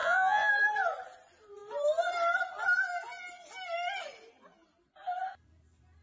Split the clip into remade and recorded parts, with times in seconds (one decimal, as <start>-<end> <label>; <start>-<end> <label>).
0.0-0.5 remade; 0.5-6.0 recorded